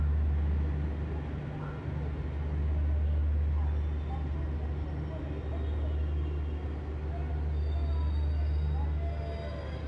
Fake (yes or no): no